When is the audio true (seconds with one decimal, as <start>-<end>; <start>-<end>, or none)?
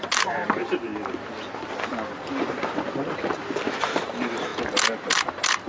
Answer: 0.9-3.8; 4.5-5.7